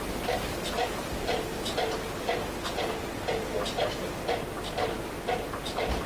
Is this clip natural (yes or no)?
yes